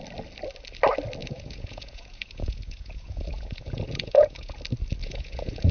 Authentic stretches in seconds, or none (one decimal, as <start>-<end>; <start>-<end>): 0.0-1.2; 4.6-5.0